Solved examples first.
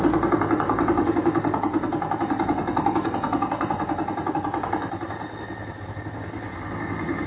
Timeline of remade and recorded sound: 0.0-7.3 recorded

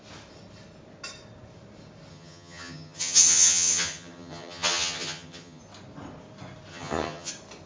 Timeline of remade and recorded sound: 0.0-2.1 recorded; 2.1-5.6 remade; 5.6-6.7 recorded; 6.7-7.3 remade; 7.3-7.7 recorded